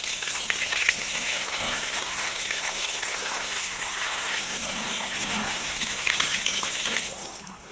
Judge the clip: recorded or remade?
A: remade